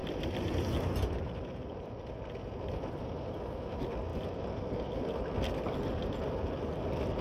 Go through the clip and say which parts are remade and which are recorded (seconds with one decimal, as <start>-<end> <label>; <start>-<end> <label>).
0.0-7.2 recorded